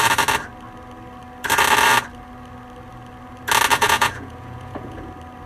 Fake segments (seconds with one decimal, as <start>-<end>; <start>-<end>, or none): 3.7-5.1